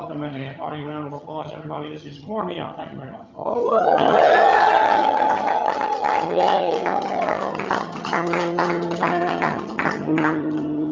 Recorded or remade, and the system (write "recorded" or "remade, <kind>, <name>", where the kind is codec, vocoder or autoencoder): remade, vocoder, HiFi-GAN